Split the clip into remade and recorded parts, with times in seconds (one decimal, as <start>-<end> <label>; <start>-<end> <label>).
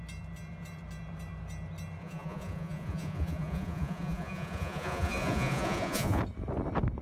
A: 0.0-2.0 recorded; 2.0-6.2 remade; 6.2-7.0 recorded